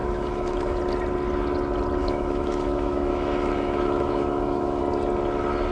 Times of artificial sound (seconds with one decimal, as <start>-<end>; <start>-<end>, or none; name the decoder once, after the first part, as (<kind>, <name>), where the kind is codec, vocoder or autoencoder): 0.0-0.8 (autoencoder, DAC-VAE); 2.0-4.8